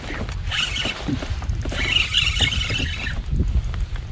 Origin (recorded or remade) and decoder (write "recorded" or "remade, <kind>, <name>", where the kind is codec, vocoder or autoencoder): recorded